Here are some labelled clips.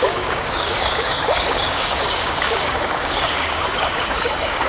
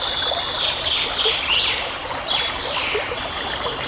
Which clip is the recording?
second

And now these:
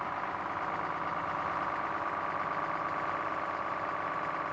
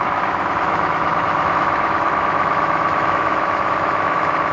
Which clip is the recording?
first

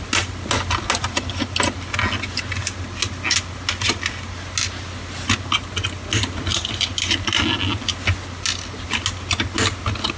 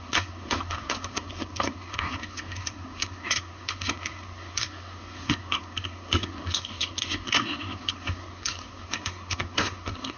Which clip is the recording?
first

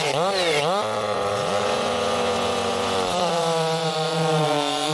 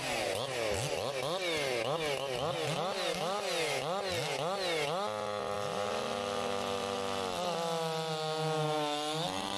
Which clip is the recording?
second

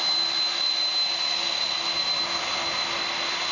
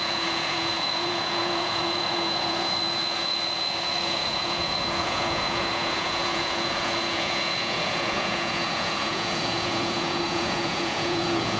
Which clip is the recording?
first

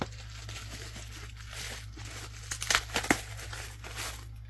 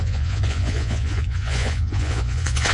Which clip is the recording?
first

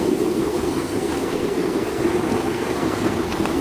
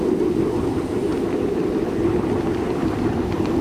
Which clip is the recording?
second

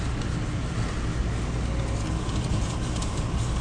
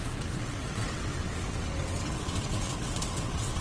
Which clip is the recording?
first